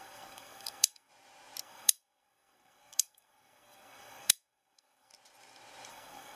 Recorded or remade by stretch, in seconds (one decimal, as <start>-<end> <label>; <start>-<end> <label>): 0.0-1.1 remade; 1.1-1.6 recorded; 1.6-5.1 remade; 5.1-5.9 recorded; 5.9-6.4 remade

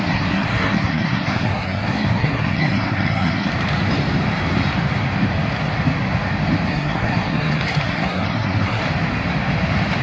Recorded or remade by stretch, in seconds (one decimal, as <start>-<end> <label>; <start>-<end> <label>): 0.0-3.5 remade; 3.5-6.7 recorded; 6.7-8.8 remade; 8.8-10.0 recorded

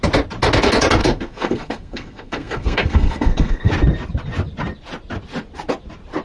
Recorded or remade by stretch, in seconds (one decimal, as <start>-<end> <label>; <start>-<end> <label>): 0.0-1.0 recorded; 1.0-3.7 remade; 3.7-6.2 recorded

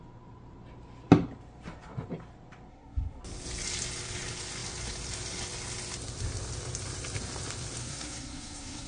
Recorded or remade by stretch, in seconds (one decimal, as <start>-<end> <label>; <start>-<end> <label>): 0.0-2.7 recorded; 2.7-3.2 remade; 3.2-7.8 recorded; 7.8-8.9 remade

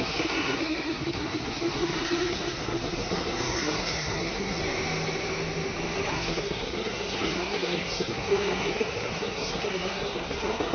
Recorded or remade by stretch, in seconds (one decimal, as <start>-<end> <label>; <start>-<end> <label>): 0.0-4.6 remade; 4.6-6.1 recorded; 6.1-10.7 remade

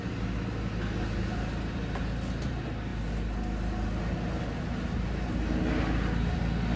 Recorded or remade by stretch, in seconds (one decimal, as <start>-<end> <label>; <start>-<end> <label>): 0.0-6.8 recorded

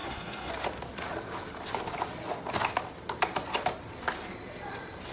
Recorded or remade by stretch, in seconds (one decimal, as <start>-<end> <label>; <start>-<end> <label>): 0.0-0.5 remade; 0.5-5.1 recorded

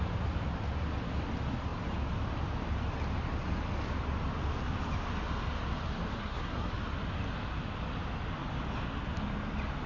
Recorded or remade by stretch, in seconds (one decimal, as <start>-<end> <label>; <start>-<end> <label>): 0.0-6.2 recorded; 6.2-6.7 remade; 6.7-9.9 recorded